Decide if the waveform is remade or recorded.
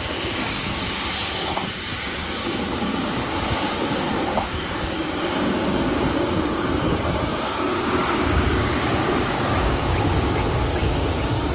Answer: remade